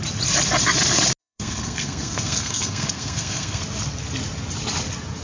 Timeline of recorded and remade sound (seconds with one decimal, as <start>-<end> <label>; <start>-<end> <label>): 0.0-1.2 recorded; 1.2-3.6 remade; 3.6-5.2 recorded